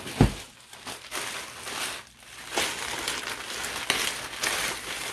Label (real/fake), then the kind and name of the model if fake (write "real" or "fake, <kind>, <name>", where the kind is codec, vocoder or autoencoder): real